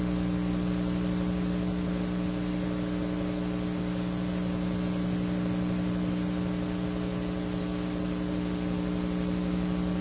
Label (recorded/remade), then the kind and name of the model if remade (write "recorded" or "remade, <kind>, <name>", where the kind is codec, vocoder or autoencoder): recorded